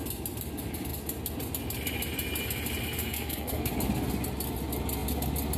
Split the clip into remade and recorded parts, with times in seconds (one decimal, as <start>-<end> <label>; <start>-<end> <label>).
0.0-3.0 recorded; 3.0-3.7 remade; 3.7-5.6 recorded

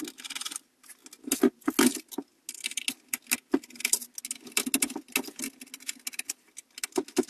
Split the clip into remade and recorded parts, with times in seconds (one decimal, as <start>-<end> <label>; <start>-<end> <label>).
0.0-7.3 recorded

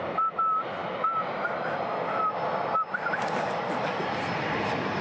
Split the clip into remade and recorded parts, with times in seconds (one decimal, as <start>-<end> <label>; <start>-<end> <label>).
0.0-5.0 recorded

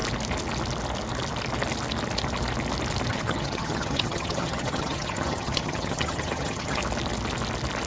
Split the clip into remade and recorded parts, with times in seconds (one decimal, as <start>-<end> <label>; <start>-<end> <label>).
0.0-3.1 recorded; 3.1-6.8 remade; 6.8-7.9 recorded

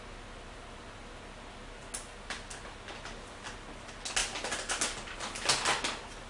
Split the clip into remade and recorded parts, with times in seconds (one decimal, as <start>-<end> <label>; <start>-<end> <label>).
0.0-6.3 recorded